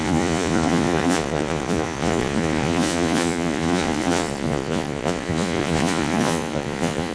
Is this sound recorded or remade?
remade